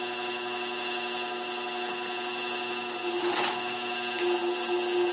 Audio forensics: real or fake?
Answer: real